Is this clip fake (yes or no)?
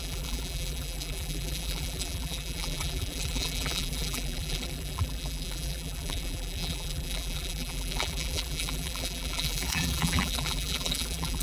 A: yes